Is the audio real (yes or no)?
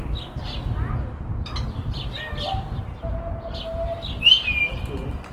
yes